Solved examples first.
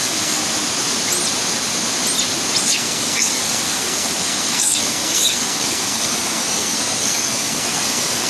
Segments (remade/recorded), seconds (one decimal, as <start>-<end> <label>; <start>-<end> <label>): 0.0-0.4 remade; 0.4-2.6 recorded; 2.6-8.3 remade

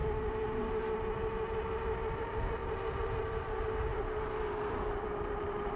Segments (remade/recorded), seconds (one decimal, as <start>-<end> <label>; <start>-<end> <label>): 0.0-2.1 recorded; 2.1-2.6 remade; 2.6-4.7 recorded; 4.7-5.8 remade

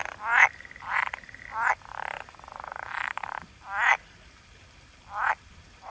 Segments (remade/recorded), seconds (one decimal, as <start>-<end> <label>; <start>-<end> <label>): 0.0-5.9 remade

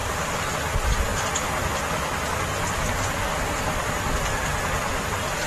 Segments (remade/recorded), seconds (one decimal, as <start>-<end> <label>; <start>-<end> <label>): 0.0-0.5 remade; 0.5-5.5 recorded

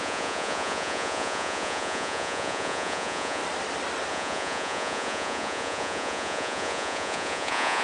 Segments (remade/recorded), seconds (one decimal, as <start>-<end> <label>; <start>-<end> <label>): 0.0-3.4 remade; 3.4-4.1 recorded; 4.1-7.8 remade